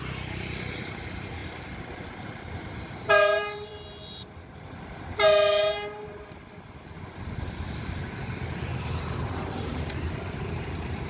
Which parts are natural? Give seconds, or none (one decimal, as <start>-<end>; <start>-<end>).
1.4-2.7; 3.7-8.8